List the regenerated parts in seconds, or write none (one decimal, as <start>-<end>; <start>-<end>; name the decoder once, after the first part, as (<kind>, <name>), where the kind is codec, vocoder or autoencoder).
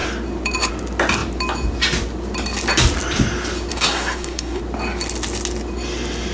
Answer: 3.7-4.6 (codec, SNAC)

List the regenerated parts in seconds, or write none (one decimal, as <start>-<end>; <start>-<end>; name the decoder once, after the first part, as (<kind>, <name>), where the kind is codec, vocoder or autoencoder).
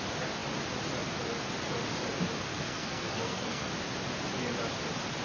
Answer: 2.5-3.7 (codec, SNAC)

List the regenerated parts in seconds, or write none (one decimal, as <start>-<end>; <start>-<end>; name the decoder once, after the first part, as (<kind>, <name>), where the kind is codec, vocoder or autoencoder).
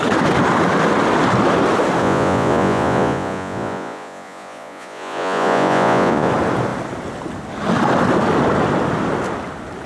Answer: 2.0-6.3 (vocoder, Vocos)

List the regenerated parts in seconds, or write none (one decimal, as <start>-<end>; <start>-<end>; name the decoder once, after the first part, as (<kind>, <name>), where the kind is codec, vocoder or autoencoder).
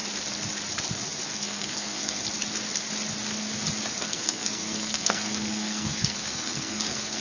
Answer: 1.3-2.2 (codec, SNAC); 4.0-7.2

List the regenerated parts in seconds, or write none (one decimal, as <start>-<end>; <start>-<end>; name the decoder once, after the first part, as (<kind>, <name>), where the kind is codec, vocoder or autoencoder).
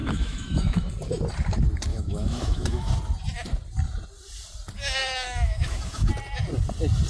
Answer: 0.0-0.9 (autoencoder, DAC-VAE); 1.9-2.9; 5.0-6.1